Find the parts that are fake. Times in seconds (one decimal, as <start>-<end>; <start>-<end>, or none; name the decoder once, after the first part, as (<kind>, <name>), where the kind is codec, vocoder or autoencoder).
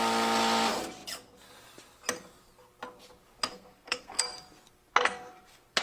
3.5-4.2 (codec, SNAC); 4.9-5.8